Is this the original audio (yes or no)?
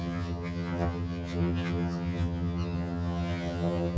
no